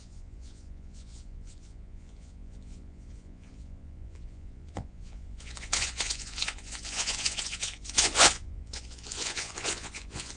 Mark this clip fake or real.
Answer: fake